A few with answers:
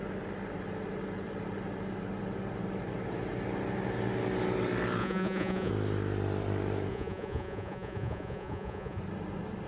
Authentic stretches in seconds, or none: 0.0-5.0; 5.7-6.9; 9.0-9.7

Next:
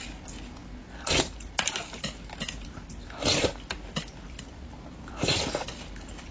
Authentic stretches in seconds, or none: 0.0-6.3

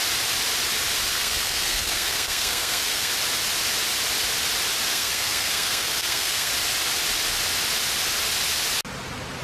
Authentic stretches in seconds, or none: 0.0-1.1; 3.1-4.9; 6.5-9.4

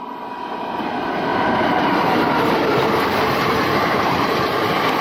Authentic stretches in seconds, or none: 0.0-1.3; 4.3-5.0